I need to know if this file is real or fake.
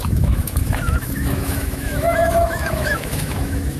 fake